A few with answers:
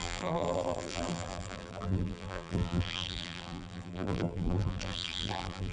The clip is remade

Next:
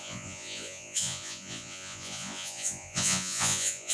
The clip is remade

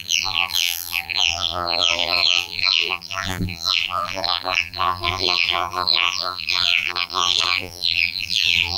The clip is remade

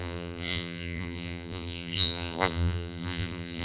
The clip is remade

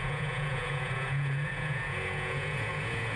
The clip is remade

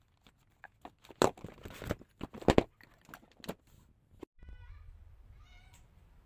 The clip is recorded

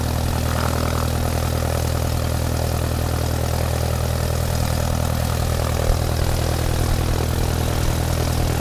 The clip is recorded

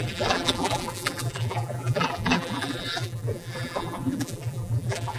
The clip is remade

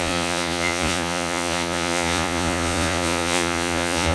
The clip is remade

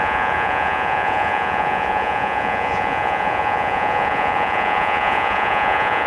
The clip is remade